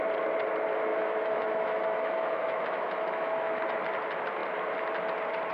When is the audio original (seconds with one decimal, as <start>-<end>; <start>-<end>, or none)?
0.0-0.9; 3.6-5.5